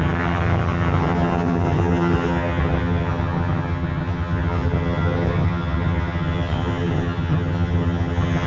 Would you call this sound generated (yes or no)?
yes